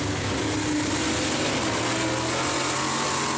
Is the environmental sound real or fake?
real